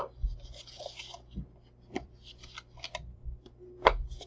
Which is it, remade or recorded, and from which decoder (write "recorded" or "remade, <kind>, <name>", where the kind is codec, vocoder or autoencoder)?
recorded